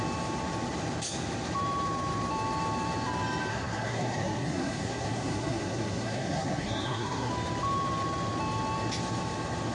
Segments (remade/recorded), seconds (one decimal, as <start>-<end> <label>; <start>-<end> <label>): 0.0-3.5 recorded; 3.5-7.3 remade; 7.3-9.7 recorded